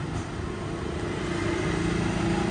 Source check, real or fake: real